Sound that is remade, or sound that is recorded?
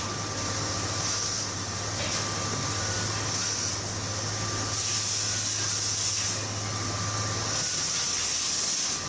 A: recorded